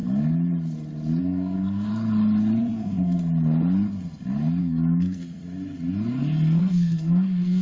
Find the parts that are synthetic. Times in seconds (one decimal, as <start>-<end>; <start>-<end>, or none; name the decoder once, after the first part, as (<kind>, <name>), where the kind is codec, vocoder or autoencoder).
1.2-1.9 (codec, SNAC); 2.6-3.2; 4.6-5.4; 6.6-7.6